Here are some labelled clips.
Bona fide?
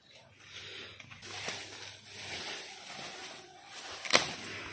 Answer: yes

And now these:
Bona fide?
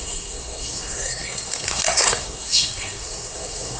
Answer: no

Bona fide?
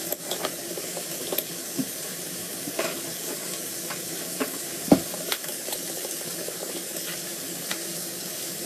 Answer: no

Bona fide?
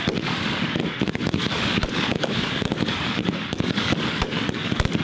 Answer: no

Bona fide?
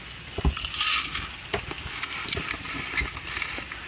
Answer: yes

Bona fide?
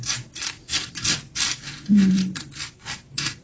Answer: no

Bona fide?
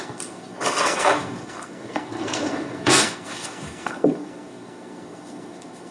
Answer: no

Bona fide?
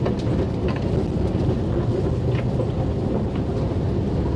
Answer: yes